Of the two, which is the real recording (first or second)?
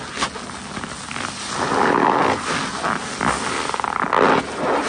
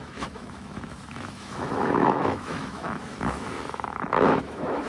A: first